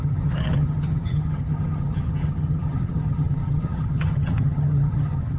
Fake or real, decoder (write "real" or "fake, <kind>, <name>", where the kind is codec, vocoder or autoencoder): fake, vocoder, HiFi-GAN